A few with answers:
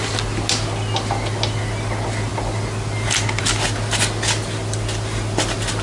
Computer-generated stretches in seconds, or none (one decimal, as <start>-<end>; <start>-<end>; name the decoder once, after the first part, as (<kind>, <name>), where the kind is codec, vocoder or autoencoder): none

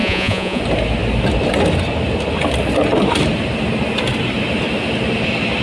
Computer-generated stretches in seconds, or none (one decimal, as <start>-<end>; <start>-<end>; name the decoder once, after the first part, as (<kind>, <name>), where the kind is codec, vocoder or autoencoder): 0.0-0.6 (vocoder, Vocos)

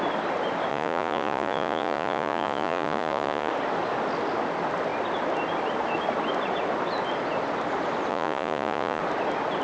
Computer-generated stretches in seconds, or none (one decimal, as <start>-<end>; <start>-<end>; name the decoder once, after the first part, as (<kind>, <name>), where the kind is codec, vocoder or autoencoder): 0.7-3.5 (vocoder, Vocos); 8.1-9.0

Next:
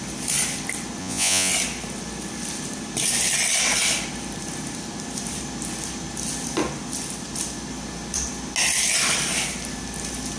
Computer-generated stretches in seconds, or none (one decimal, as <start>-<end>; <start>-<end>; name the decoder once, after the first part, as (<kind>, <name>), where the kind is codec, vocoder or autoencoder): 1.0-1.5 (vocoder, Vocos)

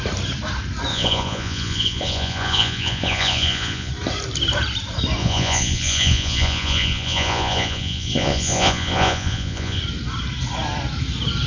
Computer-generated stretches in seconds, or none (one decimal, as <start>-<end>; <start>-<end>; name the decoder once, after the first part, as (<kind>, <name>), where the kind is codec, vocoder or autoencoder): 0.9-3.9 (vocoder, Vocos); 5.2-9.8

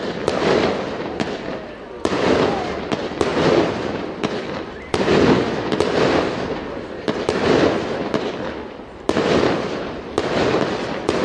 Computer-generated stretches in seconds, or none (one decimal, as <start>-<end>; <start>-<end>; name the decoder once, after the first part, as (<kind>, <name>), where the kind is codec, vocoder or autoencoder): none

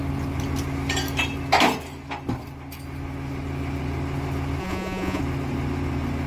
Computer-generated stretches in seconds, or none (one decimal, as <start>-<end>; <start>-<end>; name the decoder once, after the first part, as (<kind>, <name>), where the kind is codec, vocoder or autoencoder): 4.6-5.2 (vocoder, Vocos)

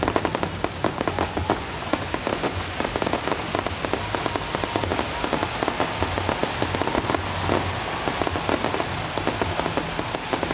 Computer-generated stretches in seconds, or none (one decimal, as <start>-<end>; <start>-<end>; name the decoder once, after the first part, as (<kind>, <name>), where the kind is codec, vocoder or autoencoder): 0.8-3.2 (vocoder, Vocos)